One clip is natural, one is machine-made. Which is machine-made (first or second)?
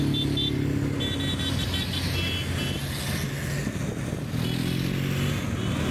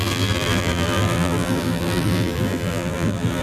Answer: second